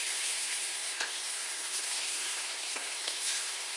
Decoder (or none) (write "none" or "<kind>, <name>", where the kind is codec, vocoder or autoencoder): codec, SNAC